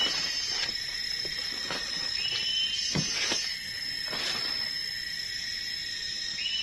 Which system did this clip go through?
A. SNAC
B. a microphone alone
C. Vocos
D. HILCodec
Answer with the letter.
B